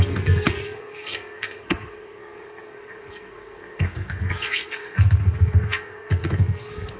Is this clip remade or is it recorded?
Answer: remade